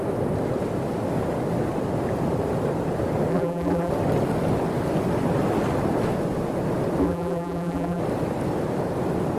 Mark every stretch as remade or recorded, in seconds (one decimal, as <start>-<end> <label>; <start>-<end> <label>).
0.0-3.3 recorded; 3.3-3.9 remade; 3.9-7.0 recorded; 7.0-8.0 remade; 8.0-9.4 recorded